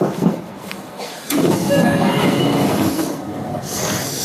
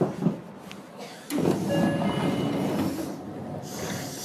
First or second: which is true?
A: second